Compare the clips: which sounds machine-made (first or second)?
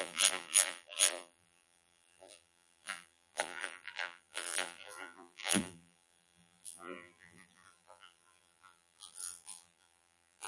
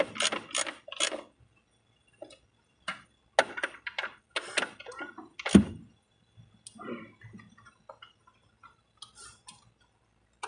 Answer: first